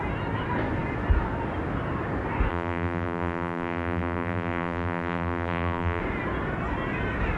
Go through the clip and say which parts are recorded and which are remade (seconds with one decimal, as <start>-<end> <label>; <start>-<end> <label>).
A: 0.0-2.5 recorded; 2.5-6.0 remade; 6.0-7.4 recorded